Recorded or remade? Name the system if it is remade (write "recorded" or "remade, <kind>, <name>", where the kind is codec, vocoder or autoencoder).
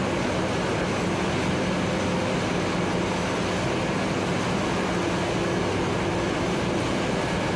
recorded